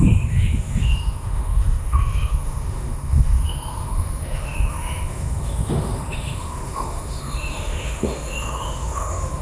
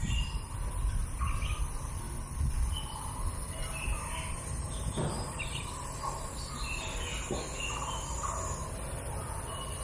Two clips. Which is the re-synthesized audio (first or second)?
first